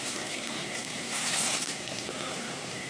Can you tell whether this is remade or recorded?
remade